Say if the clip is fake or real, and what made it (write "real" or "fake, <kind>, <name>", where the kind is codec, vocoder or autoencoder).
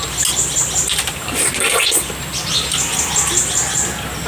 real